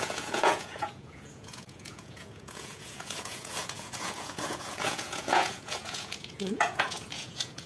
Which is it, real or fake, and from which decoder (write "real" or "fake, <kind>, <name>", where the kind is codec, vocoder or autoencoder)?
fake, vocoder, Vocos